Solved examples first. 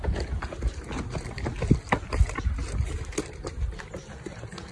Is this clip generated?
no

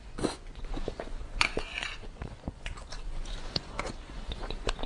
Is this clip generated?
yes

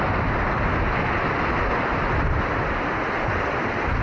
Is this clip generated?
no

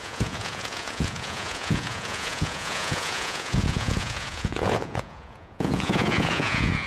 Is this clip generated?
yes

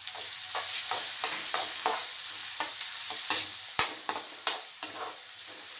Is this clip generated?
no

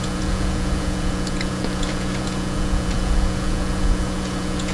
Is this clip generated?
yes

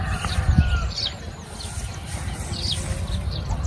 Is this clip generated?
no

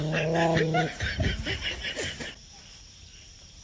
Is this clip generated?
no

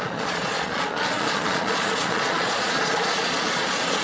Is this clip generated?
yes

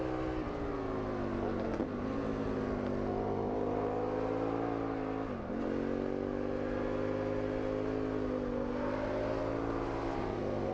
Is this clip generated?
no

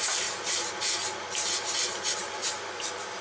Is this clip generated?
no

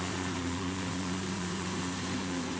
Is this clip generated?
yes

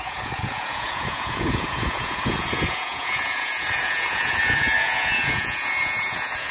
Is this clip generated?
yes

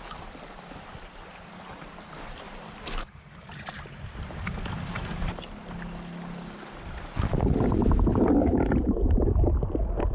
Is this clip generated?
no